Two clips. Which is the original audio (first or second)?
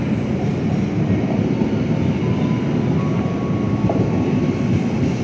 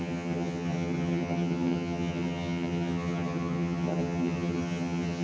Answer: first